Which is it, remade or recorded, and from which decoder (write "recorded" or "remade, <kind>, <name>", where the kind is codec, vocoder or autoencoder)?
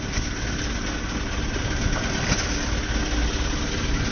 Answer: recorded